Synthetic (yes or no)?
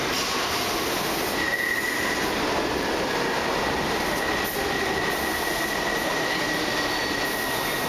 no